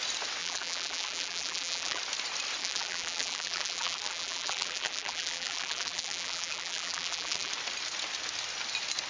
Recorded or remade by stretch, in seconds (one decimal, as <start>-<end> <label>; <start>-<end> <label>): 0.0-0.4 recorded; 0.4-2.0 remade; 2.0-2.6 recorded; 2.6-7.5 remade; 7.5-9.1 recorded